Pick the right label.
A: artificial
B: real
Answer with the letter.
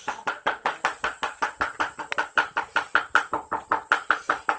A